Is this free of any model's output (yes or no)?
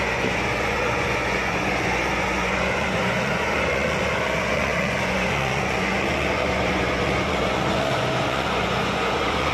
no